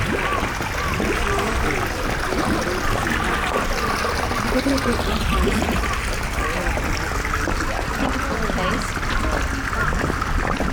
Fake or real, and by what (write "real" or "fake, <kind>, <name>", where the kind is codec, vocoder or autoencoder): real